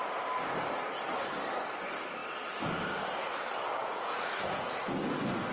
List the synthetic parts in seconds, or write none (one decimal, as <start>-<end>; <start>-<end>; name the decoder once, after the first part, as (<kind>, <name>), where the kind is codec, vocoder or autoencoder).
3.8-4.9 (vocoder, Vocos)